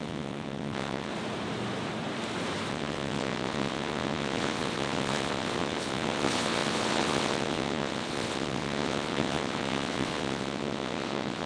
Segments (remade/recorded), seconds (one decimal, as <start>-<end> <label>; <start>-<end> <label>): 0.0-1.1 remade; 1.1-2.7 recorded; 2.7-11.5 remade